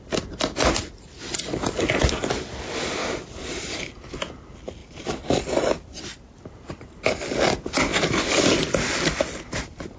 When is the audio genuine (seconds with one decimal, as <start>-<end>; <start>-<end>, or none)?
0.0-3.0; 4.1-4.8; 5.4-10.0